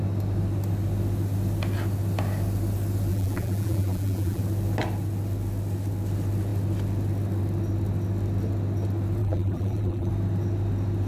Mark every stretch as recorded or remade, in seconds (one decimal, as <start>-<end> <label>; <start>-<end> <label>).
0.0-3.1 recorded; 3.1-4.4 remade; 4.4-9.2 recorded; 9.2-10.1 remade; 10.1-11.1 recorded